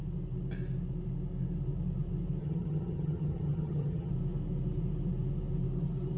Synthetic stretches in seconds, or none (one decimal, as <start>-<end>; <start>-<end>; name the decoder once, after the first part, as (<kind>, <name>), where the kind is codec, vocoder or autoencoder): 2.4-4.1 (vocoder, HiFi-GAN)